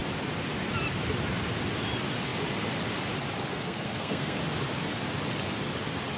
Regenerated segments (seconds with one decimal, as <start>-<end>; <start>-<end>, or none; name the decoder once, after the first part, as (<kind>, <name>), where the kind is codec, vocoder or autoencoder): 3.5-4.4 (codec, SNAC)